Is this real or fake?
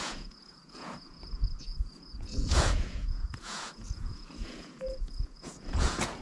fake